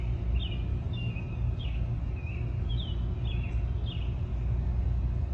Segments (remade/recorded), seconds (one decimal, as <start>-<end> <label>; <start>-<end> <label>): 0.0-0.7 recorded; 0.7-2.7 remade; 2.7-4.3 recorded; 4.3-5.3 remade